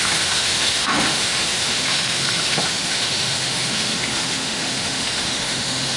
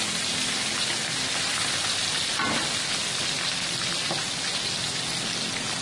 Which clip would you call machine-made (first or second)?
first